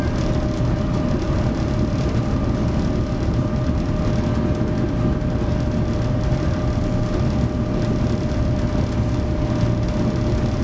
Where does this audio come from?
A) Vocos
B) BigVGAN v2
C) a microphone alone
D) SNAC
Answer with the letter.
C